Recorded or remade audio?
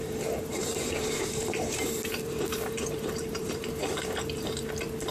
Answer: remade